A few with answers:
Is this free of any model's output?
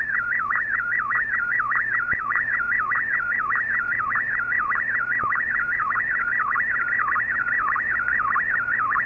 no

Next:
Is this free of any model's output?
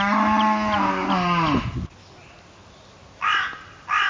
yes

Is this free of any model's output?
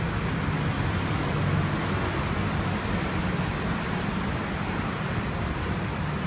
yes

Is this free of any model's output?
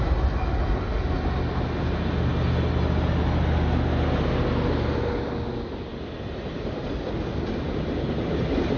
yes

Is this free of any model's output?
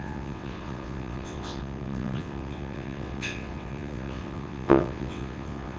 no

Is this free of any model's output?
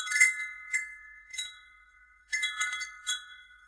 no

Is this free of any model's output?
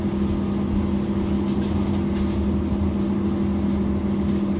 yes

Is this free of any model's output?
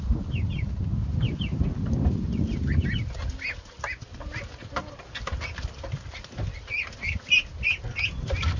yes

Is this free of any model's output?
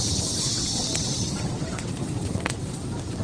no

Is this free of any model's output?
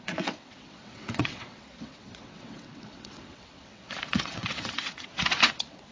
no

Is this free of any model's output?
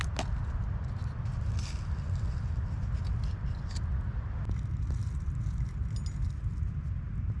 yes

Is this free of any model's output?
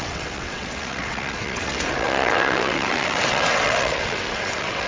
no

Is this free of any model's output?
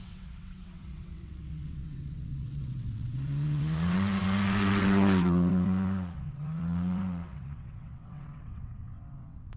no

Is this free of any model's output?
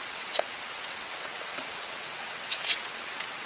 no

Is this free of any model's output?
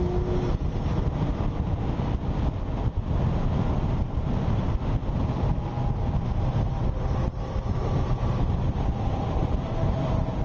yes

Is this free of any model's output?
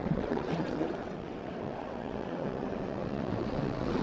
no